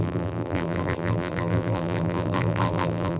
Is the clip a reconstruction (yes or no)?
yes